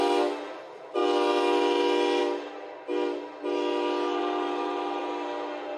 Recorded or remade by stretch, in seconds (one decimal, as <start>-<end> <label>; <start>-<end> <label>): 0.0-4.2 recorded; 4.2-5.0 remade; 5.0-5.8 recorded